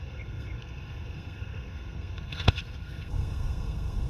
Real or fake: fake